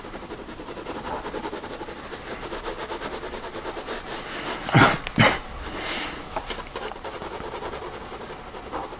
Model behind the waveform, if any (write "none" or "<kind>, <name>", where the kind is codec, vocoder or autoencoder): none